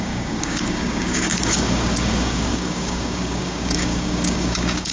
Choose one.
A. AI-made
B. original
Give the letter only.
A